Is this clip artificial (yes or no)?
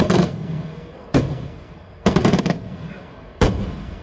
yes